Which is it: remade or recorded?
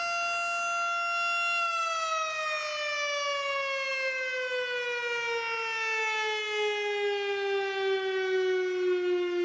recorded